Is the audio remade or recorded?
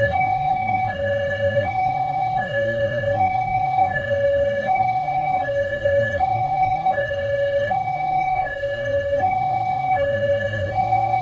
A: remade